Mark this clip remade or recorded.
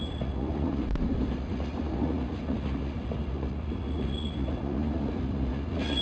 remade